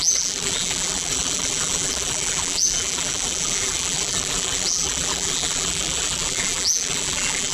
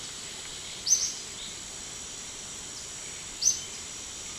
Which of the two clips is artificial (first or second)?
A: first